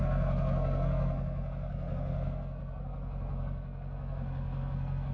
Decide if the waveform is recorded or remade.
remade